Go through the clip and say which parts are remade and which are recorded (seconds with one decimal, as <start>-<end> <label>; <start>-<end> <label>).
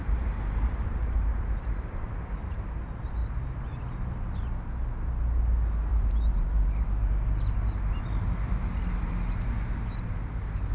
0.0-2.8 remade; 2.8-3.2 recorded; 3.2-3.8 remade; 3.8-5.9 recorded; 5.9-7.1 remade; 7.1-10.7 recorded